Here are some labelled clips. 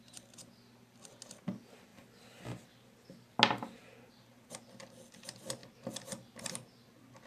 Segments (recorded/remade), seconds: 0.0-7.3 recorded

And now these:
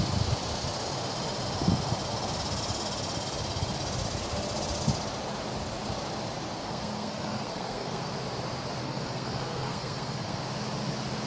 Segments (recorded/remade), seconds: 0.0-6.6 recorded; 6.6-8.1 remade; 8.1-8.8 recorded; 8.8-10.4 remade; 10.4-11.3 recorded

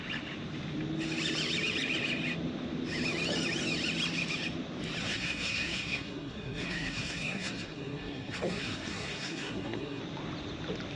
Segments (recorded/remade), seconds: 0.0-5.0 recorded; 5.0-10.0 remade; 10.0-11.0 recorded

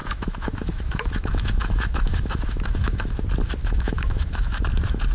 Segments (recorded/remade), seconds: 0.0-3.1 remade; 3.1-3.6 recorded; 3.6-4.6 remade; 4.6-5.1 recorded